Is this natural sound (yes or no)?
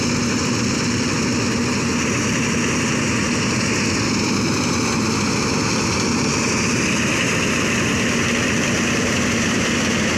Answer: yes